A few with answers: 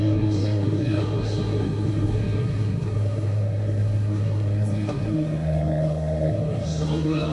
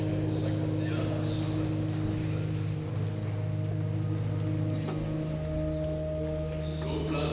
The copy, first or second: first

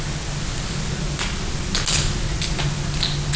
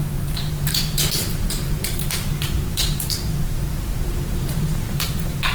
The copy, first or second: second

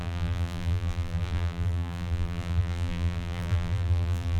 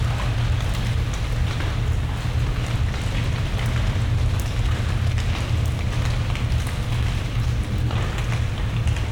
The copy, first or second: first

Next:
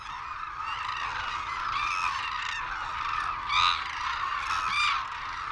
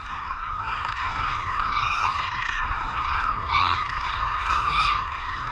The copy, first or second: second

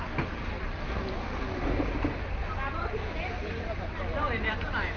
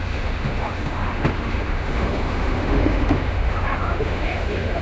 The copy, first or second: second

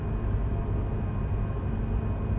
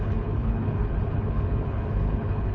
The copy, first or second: second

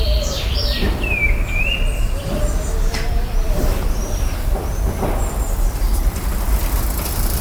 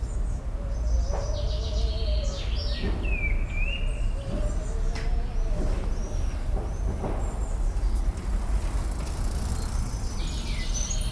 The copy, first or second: first